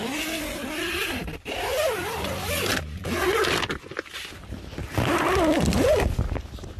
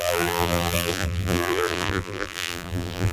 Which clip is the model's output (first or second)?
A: second